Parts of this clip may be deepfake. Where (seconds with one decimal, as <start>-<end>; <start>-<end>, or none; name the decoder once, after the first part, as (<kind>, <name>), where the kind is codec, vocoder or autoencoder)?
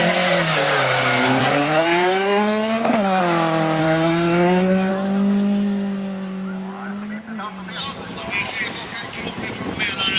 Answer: 1.4-3.2 (codec, SNAC); 3.8-4.9